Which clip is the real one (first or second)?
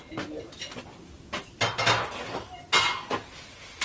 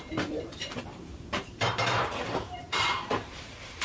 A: first